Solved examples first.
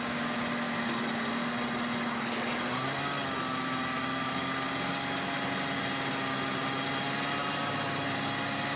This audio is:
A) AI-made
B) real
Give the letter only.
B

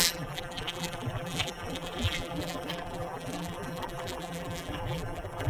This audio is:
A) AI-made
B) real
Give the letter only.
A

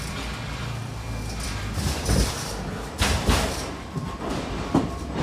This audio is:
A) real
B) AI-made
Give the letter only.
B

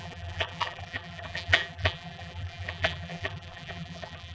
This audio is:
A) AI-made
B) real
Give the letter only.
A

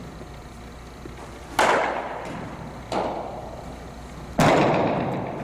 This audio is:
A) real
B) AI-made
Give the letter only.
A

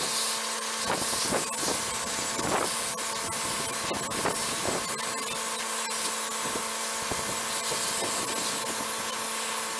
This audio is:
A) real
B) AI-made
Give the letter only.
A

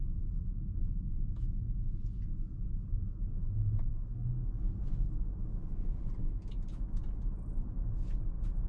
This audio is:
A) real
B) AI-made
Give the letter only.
A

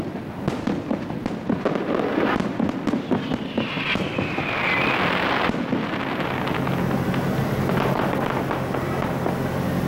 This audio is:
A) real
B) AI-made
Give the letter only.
A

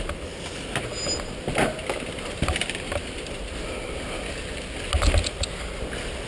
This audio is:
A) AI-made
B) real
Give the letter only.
B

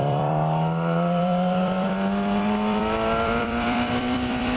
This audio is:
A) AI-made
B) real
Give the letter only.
A